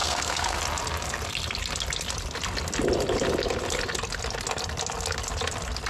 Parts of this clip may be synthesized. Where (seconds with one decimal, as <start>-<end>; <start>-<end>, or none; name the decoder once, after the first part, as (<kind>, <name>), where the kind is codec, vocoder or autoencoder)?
0.0-0.6 (codec, SNAC)